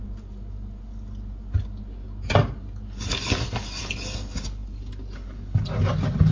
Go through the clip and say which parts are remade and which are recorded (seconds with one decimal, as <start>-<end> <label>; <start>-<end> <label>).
0.0-6.3 recorded